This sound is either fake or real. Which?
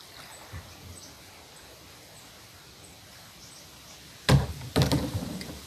real